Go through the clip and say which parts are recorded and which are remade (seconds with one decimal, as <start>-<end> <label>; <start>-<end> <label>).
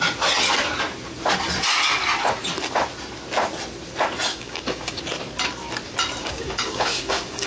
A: 0.0-4.3 recorded; 4.3-5.0 remade; 5.0-6.2 recorded; 6.2-7.5 remade